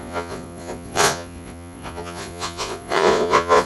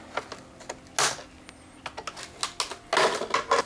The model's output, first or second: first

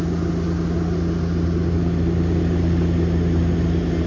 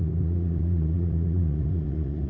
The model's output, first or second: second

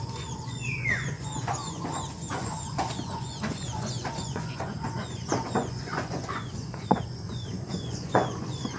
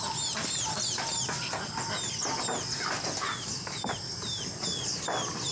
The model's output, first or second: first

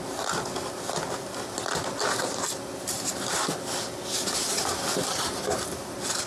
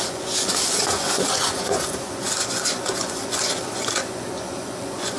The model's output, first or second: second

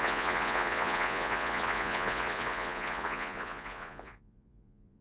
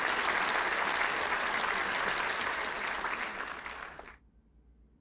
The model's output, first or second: first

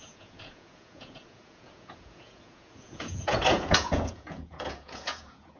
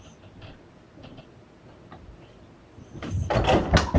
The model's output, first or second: first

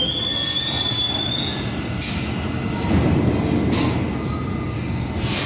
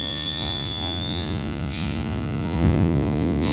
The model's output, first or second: second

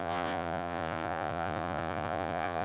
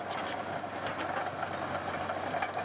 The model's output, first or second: first